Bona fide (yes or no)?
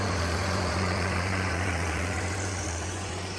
no